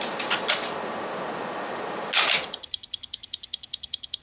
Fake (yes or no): no